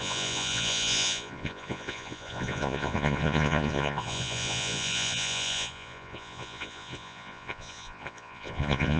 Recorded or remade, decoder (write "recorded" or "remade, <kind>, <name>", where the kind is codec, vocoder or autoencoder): remade, vocoder, Vocos